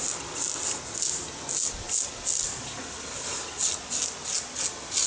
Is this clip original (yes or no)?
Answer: yes